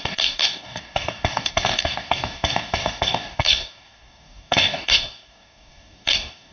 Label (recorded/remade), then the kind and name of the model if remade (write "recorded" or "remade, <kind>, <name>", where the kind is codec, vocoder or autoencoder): remade, codec, DAC